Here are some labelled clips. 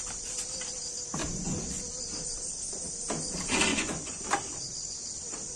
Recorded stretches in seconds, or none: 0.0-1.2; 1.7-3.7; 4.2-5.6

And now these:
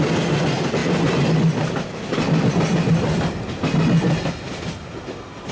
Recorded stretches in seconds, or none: 0.0-5.5

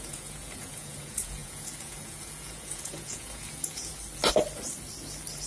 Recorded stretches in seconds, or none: 3.9-5.5

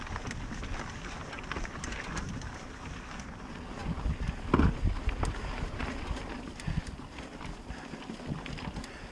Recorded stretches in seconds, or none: 0.0-9.1

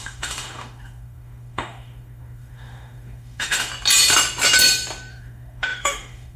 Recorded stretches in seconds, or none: 3.7-5.1